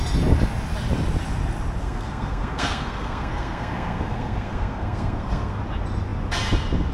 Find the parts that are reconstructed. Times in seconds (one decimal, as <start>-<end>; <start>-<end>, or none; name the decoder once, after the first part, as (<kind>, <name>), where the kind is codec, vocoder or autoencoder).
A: 1.8-5.6 (codec, SNAC)